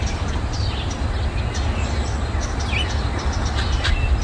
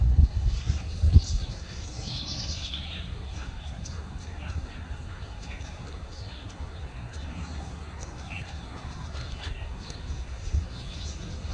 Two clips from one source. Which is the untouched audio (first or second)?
first